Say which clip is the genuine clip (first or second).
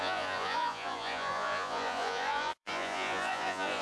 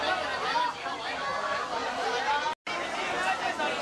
second